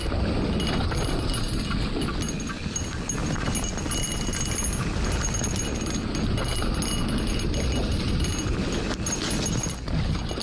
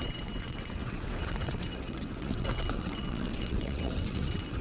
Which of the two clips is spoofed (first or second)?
second